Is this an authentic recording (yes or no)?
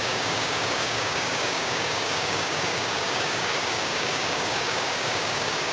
no